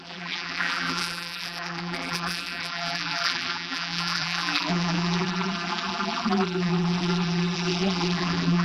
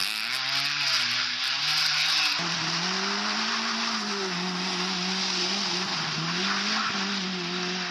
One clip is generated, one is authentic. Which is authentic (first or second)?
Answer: second